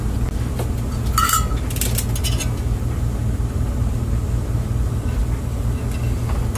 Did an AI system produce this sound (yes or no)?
no